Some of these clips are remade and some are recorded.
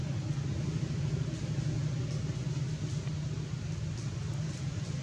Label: recorded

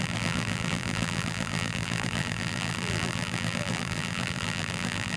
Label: remade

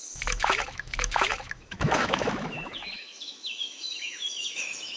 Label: remade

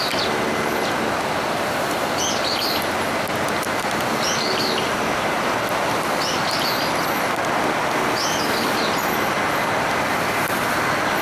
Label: recorded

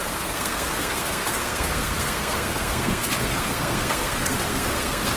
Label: remade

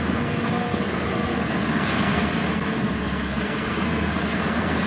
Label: remade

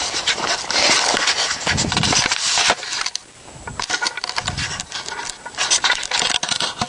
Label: recorded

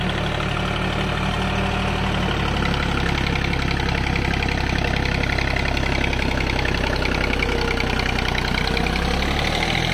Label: recorded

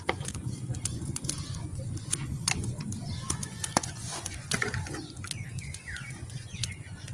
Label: remade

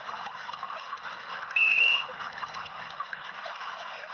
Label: remade